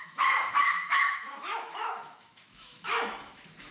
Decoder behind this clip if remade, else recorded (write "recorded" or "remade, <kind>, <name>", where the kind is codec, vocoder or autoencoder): remade, autoencoder, DAC-VAE